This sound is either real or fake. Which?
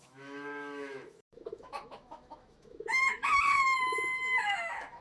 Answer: fake